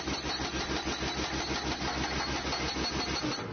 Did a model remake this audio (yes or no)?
no